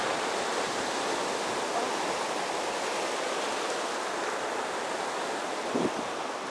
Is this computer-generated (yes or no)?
no